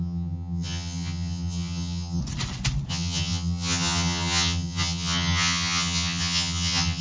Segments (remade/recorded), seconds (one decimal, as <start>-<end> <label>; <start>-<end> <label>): 0.0-2.2 remade; 2.2-2.9 recorded; 2.9-7.0 remade